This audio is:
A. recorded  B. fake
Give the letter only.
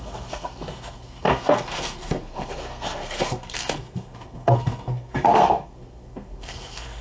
B